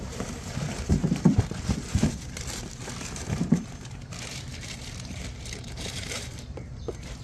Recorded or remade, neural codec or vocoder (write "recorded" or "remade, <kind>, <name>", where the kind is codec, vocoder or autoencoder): remade, vocoder, BigVGAN v2